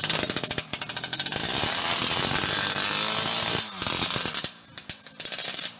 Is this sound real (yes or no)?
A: yes